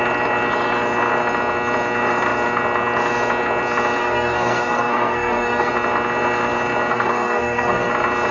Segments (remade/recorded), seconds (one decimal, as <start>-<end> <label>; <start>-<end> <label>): 0.0-4.0 recorded; 4.0-5.7 remade; 5.7-6.9 recorded; 6.9-7.9 remade; 7.9-8.3 recorded